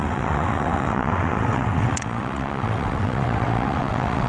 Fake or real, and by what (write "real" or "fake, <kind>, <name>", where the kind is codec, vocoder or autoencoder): fake, vocoder, WaveNeXt